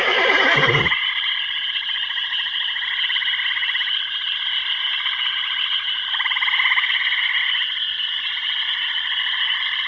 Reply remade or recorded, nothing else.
recorded